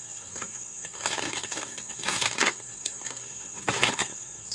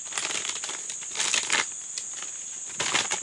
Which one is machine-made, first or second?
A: first